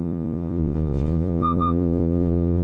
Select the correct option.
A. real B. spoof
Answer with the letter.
B